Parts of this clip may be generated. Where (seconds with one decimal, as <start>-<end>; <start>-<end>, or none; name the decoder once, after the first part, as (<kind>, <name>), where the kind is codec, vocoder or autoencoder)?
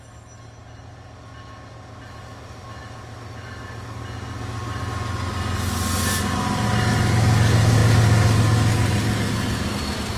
none